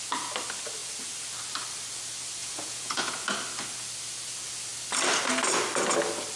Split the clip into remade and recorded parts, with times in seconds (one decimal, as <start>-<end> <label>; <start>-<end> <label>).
0.0-2.4 recorded; 2.4-3.1 remade; 3.1-6.4 recorded